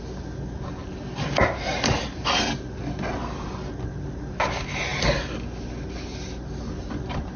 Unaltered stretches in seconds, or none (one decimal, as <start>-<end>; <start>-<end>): 0.0-7.4